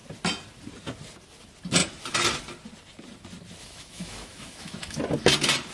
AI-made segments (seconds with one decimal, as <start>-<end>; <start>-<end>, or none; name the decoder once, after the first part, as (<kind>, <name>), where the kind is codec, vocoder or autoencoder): 3.6-5.0 (autoencoder, DAC-VAE)